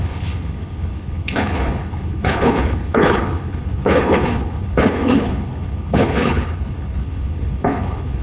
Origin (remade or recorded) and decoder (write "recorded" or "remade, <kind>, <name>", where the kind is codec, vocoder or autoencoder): remade, codec, HILCodec